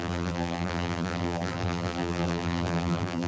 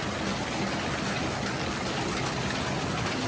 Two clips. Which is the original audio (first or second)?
second